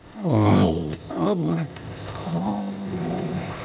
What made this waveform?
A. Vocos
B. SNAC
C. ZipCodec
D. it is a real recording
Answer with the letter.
C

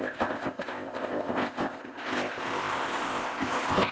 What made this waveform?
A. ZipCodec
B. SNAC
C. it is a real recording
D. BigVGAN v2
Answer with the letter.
A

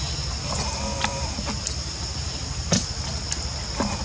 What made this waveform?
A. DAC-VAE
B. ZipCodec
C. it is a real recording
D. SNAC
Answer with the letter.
C